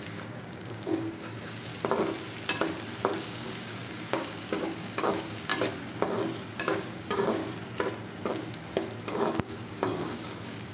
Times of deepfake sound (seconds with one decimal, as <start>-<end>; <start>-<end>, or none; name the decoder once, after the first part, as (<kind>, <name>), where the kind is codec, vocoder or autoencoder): 0.0-1.7 (codec, DAC); 3.2-5.5; 6.6-7.4; 9.0-10.7